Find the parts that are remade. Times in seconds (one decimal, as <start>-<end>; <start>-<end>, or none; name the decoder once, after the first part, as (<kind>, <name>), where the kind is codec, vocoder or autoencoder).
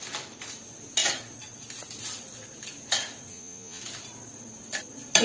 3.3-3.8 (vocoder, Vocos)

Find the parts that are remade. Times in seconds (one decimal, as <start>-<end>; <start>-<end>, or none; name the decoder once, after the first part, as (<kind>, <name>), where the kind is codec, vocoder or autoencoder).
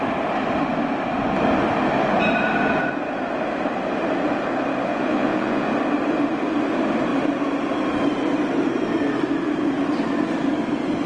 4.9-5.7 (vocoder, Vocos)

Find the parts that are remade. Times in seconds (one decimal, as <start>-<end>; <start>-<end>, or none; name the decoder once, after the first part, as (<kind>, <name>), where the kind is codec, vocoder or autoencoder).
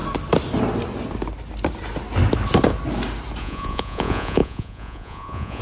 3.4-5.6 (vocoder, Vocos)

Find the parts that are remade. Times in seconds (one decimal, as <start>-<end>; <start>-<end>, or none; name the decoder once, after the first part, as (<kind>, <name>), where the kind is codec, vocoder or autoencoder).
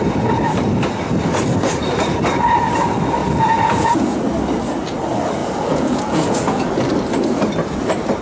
3.2-4.2 (vocoder, Vocos); 5.4-6.7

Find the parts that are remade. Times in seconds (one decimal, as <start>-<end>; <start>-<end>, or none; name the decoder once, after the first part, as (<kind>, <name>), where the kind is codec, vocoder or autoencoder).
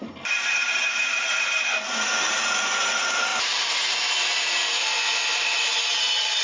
none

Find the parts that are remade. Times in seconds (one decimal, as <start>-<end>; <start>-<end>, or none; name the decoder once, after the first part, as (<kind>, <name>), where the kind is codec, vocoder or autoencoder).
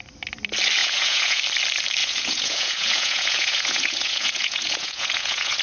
0.8-1.4 (vocoder, Vocos); 2.0-5.6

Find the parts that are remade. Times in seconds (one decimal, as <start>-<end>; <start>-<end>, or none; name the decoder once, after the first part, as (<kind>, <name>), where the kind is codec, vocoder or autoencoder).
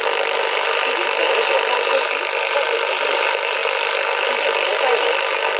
none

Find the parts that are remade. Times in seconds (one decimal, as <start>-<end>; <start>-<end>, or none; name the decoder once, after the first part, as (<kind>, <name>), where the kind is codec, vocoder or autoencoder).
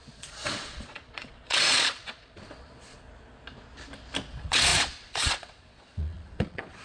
0.0-3.1 (vocoder, Vocos); 4.3-6.8